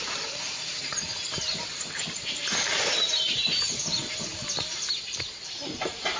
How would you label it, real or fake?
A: fake